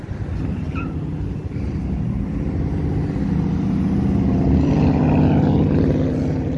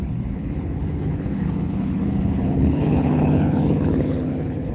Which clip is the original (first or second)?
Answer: first